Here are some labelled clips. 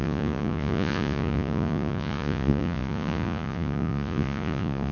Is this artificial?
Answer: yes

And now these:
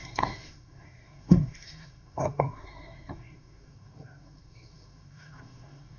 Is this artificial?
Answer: yes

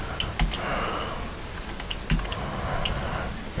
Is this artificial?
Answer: no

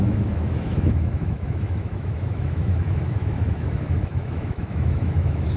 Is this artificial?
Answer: yes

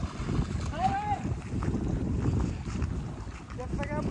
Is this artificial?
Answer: no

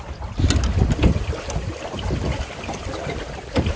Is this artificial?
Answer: no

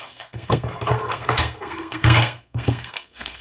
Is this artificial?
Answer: yes